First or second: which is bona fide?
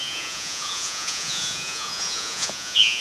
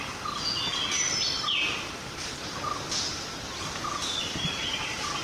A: second